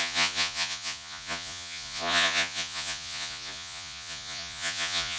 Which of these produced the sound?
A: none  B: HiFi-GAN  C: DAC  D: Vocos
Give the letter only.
D